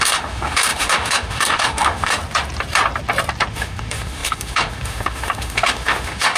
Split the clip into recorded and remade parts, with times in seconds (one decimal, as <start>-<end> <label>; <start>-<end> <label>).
0.0-2.2 remade; 2.2-3.5 recorded; 3.5-6.4 remade